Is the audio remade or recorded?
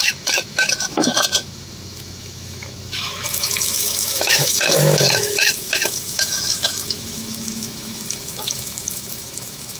remade